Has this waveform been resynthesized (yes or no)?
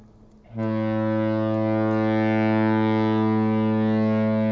no